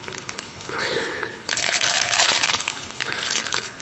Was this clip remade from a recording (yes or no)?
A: yes